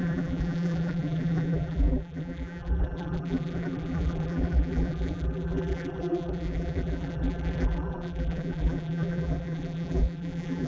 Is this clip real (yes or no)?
no